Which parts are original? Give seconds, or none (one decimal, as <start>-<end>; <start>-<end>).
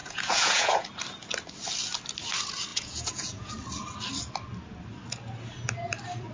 0.9-2.7; 3.5-6.3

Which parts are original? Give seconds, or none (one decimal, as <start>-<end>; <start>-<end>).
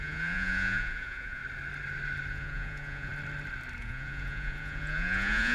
1.4-2.3; 3.1-3.8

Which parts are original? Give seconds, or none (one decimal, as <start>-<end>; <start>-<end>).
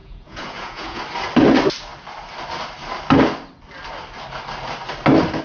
1.0-5.4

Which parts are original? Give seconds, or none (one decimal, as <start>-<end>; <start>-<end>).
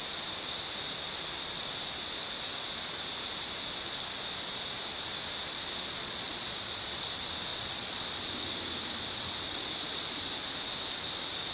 0.0-6.0; 7.0-7.5; 8.0-11.5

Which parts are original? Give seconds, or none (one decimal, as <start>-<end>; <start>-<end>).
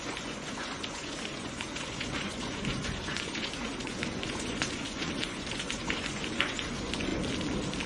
7.1-7.9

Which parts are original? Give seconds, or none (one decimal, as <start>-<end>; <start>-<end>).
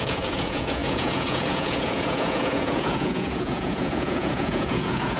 none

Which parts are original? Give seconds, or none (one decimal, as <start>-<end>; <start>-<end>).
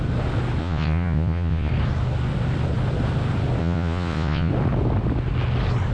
0.0-0.6; 1.7-3.6; 4.5-5.9